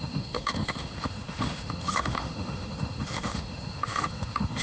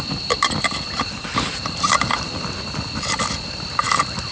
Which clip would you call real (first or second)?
second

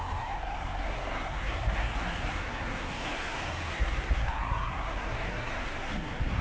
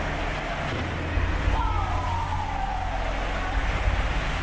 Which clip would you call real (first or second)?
second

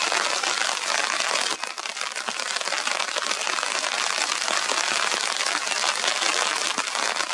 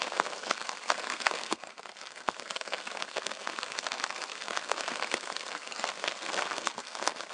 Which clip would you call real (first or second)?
first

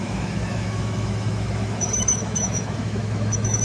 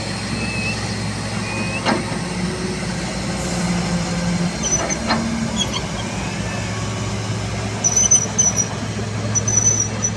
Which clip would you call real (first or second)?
second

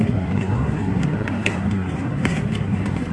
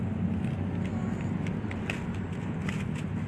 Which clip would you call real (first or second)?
second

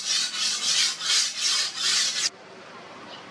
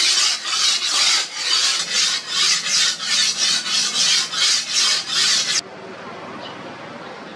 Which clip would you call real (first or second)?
second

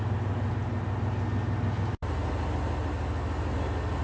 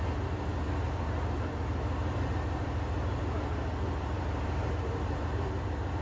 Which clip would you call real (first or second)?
first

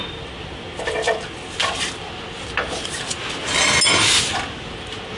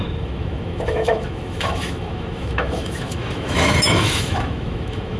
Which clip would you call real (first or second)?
first